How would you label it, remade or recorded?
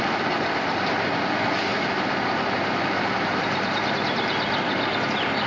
recorded